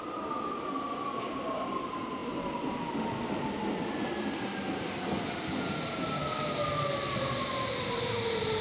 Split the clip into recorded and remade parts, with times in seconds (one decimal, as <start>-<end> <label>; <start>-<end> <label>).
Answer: 0.0-8.6 recorded